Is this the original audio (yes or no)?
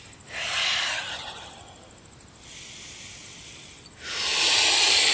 no